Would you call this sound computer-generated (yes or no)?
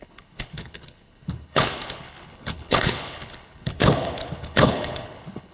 yes